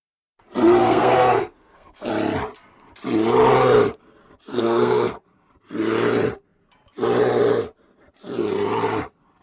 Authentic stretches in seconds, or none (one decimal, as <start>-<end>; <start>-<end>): 0.0-0.8; 2.1-4.5; 5.1-9.4